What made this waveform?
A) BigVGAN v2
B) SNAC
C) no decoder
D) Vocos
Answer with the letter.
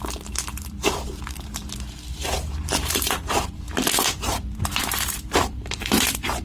A